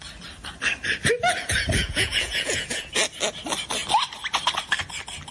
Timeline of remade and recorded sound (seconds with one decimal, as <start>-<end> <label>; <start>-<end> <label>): 0.0-1.8 recorded; 1.8-2.9 remade; 2.9-5.3 recorded